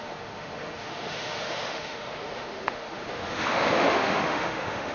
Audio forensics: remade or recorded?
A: remade